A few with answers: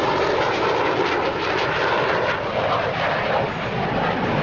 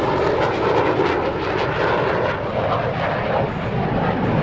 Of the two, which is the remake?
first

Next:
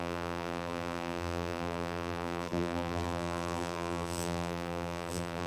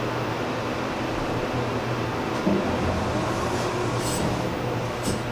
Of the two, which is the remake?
first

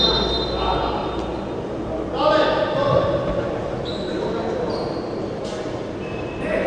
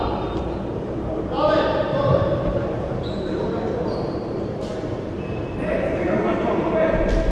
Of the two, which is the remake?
second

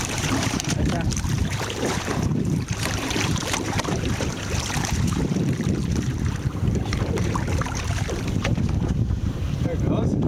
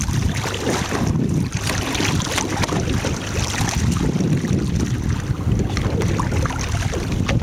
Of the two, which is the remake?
first